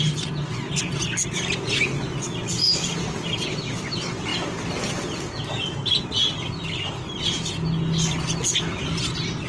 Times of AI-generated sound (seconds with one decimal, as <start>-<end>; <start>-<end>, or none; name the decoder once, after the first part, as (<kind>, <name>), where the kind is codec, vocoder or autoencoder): none

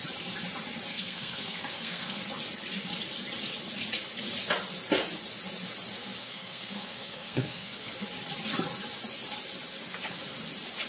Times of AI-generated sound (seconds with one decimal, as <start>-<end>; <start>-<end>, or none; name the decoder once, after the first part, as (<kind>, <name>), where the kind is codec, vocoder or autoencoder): 0.9-2.2 (codec, SNAC); 6.2-7.9

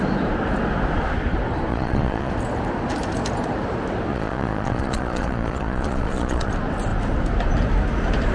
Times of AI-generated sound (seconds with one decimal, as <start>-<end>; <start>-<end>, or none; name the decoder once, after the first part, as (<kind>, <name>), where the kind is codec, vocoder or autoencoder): 1.7-2.3 (vocoder, Vocos); 4.1-6.5

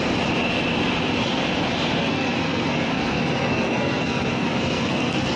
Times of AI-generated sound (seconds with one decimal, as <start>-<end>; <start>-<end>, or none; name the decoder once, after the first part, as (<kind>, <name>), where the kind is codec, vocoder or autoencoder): 2.0-5.4 (codec, SNAC)

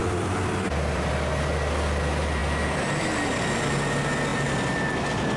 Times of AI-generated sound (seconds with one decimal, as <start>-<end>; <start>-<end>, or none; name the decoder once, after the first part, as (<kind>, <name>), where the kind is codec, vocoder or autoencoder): 0.0-1.1 (vocoder, BigVGAN v2); 2.4-3.6; 4.3-5.4

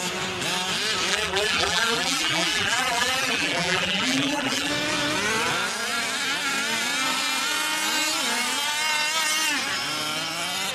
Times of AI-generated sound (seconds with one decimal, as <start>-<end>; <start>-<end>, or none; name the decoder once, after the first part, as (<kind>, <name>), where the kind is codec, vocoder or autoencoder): 1.1-4.7 (vocoder, BigVGAN v2)

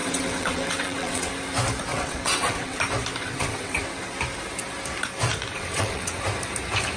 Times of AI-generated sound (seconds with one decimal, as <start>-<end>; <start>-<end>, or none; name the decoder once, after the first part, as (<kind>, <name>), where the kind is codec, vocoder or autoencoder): 0.0-1.3 (vocoder, WaveNeXt); 1.9-2.8; 3.2-3.8; 5.5-6.2